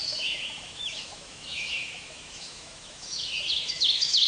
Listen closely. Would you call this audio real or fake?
fake